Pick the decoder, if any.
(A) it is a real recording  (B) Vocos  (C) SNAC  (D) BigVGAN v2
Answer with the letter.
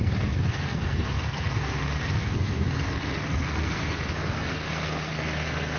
C